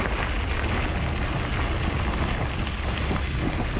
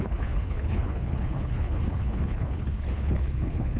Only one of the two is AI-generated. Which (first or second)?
second